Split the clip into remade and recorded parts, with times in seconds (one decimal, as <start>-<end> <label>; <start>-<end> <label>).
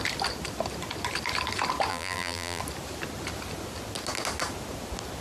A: 0.0-1.9 recorded; 1.9-2.6 remade; 2.6-5.2 recorded